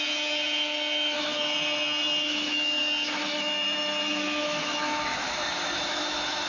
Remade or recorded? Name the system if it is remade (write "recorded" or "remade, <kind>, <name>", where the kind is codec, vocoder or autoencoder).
remade, autoencoder, DAC-VAE